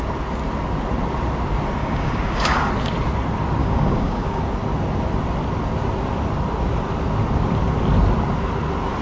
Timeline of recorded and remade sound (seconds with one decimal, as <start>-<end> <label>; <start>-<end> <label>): 0.0-1.8 recorded; 1.8-2.7 remade; 2.7-3.6 recorded; 3.6-4.4 remade; 4.4-9.0 recorded